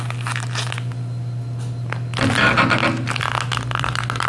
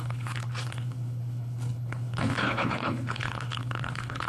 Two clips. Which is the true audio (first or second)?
first